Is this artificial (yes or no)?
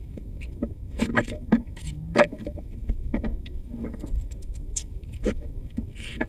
yes